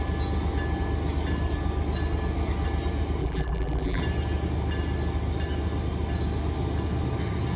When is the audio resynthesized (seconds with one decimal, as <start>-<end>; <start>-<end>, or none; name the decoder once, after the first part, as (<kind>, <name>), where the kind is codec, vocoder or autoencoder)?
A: 3.2-4.0 (vocoder, BigVGAN v2)